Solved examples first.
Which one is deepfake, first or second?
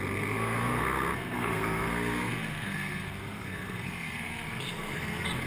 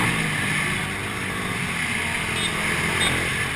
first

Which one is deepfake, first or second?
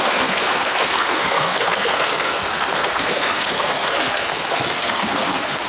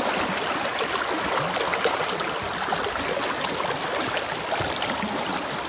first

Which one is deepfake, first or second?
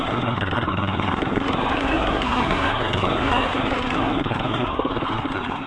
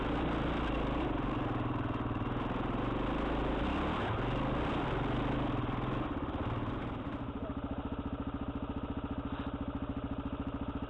first